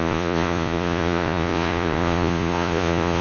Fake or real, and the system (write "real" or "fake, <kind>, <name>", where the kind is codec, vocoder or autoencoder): fake, vocoder, Vocos